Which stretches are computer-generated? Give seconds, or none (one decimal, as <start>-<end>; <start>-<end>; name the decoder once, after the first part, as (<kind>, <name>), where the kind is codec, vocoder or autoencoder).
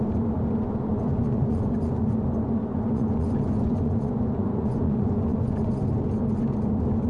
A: 0.9-2.1 (vocoder, Vocos); 2.6-5.7